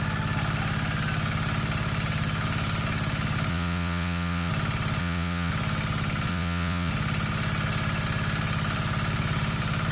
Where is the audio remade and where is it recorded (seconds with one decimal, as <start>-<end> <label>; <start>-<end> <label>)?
0.0-3.5 recorded; 3.5-4.5 remade; 4.5-5.0 recorded; 5.0-5.5 remade; 5.5-6.3 recorded; 6.3-6.9 remade; 6.9-9.9 recorded